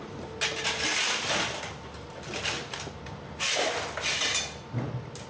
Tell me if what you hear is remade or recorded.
recorded